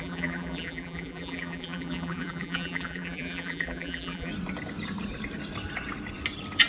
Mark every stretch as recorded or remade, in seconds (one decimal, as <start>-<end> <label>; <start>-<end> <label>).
0.0-4.3 remade; 4.3-6.7 recorded